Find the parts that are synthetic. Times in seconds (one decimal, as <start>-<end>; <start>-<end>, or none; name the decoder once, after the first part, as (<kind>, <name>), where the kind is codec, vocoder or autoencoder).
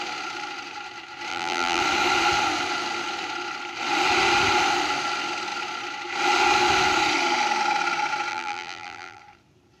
1.3-1.8 (vocoder, BigVGAN v2); 8.3-9.2